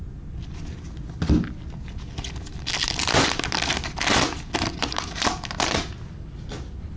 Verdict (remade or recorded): recorded